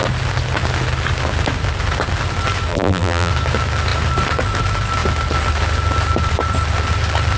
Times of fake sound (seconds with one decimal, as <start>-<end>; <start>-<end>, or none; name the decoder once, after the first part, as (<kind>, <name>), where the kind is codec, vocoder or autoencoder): 2.7-3.3 (vocoder, BigVGAN v2)